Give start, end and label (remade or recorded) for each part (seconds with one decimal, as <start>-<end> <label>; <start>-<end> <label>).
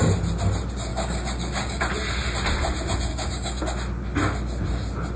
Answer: 0.0-0.9 recorded; 0.9-1.8 remade; 1.8-3.1 recorded; 3.1-3.6 remade; 3.6-5.2 recorded